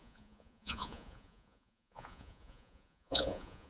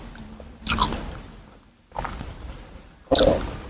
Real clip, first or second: second